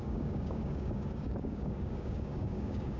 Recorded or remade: remade